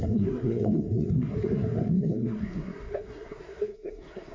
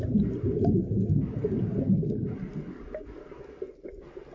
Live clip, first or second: second